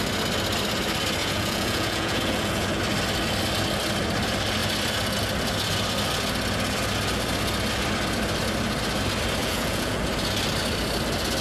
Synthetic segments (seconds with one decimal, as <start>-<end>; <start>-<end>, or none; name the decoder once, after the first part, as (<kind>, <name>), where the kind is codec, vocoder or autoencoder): 1.2-2.8 (vocoder, Vocos); 9.4-10.0